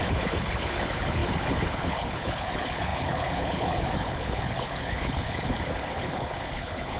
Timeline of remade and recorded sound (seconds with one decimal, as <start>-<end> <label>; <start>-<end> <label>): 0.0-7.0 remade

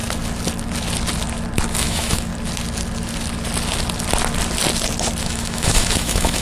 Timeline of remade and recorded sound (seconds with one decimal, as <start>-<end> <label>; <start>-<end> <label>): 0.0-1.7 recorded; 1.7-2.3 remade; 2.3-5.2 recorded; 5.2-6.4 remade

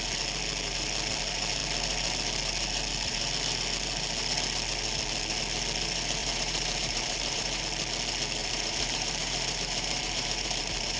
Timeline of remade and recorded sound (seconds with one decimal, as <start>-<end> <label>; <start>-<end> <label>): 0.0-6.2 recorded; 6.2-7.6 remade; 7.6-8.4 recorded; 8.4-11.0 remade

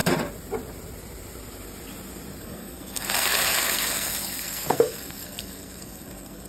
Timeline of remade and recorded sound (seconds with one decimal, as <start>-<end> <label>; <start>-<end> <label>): 0.0-2.4 recorded; 2.4-6.5 remade